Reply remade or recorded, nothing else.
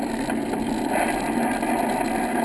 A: recorded